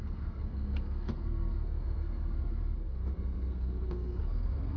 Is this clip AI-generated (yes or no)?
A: yes